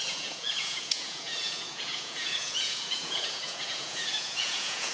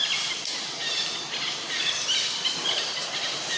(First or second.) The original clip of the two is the second